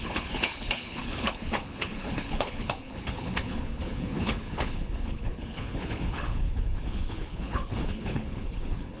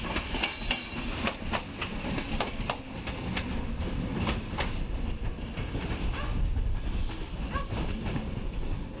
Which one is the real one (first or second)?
second